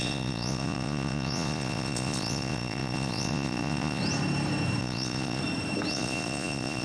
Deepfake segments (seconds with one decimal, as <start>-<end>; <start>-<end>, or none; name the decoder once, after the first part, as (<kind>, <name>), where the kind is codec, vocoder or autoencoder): 0.0-4.0 (vocoder, Vocos); 4.8-5.4; 5.9-6.8